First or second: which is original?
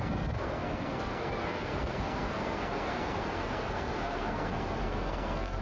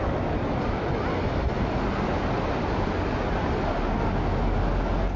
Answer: second